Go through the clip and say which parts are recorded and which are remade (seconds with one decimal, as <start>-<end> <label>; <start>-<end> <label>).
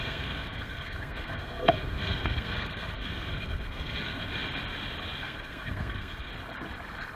0.0-4.2 remade; 4.2-5.2 recorded; 5.2-6.3 remade; 6.3-7.2 recorded